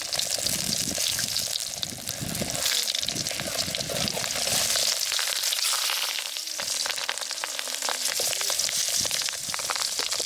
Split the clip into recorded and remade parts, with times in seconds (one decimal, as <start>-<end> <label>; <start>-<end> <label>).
0.0-10.3 recorded